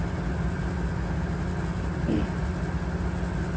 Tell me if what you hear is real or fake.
real